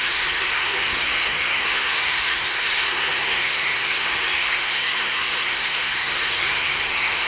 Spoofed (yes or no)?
yes